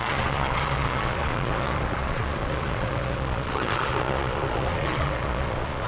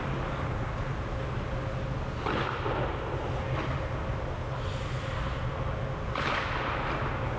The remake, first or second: first